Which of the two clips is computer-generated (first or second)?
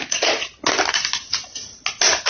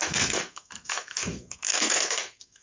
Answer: second